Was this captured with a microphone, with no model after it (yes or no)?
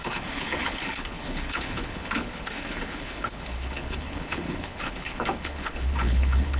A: no